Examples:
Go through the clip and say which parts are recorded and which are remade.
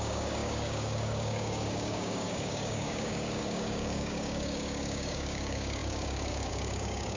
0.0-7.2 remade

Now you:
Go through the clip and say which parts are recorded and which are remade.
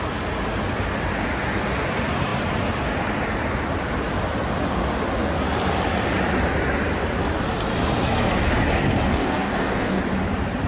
0.0-9.1 recorded; 9.1-10.0 remade; 10.0-10.7 recorded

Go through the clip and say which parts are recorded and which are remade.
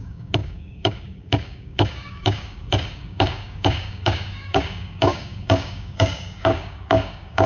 0.0-7.5 remade